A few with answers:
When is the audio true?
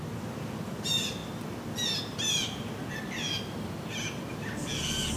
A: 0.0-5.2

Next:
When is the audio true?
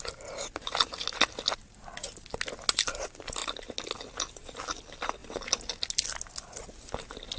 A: 0.0-7.4